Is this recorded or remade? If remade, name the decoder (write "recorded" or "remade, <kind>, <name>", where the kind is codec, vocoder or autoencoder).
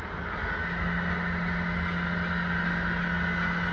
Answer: recorded